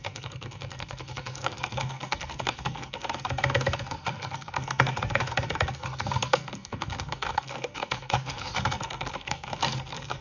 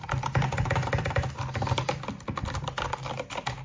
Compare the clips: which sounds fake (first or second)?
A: first